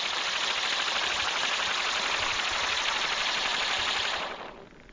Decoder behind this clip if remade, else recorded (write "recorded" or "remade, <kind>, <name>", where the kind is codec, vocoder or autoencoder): recorded